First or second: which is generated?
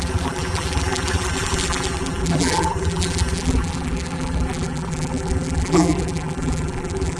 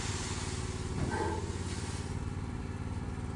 first